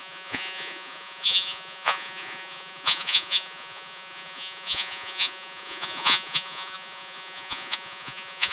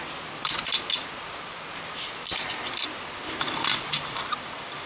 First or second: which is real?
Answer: second